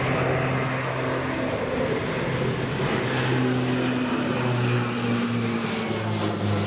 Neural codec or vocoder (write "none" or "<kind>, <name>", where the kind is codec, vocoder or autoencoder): none